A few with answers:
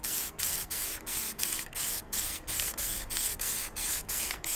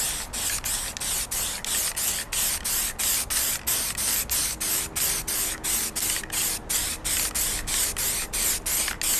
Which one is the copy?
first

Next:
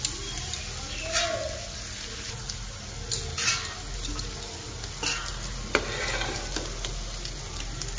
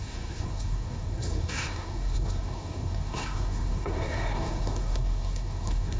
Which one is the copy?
second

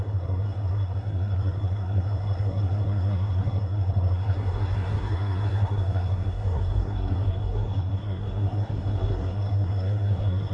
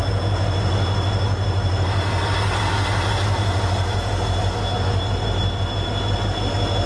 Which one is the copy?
first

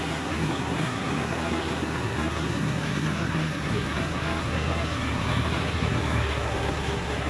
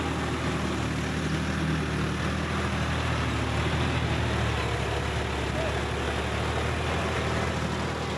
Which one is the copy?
first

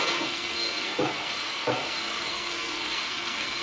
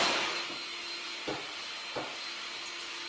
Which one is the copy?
first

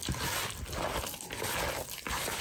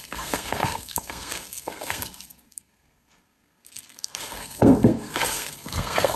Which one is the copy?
second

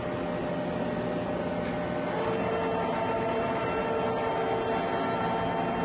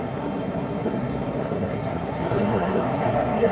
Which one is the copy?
second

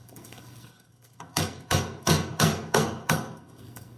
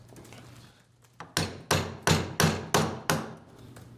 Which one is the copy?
first